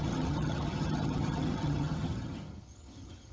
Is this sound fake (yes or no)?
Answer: yes